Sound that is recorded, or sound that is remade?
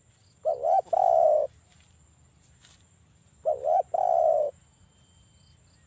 recorded